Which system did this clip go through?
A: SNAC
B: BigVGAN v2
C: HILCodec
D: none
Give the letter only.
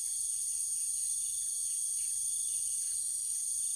D